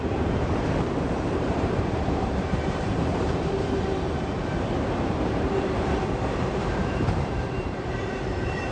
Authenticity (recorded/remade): remade